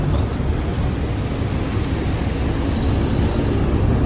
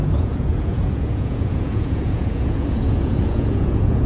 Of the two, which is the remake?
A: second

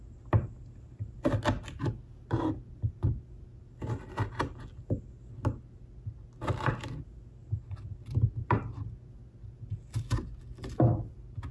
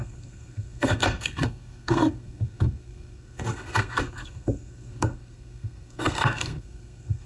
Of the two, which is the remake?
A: second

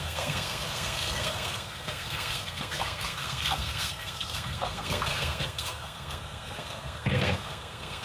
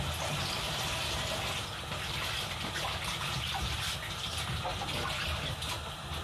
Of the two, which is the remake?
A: first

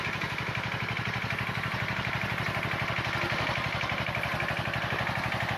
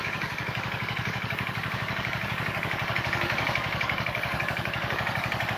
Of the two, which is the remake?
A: second